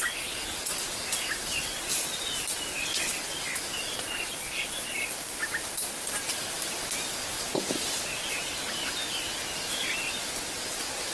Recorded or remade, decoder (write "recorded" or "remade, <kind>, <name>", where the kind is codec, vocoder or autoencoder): recorded